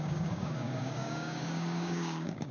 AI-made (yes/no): yes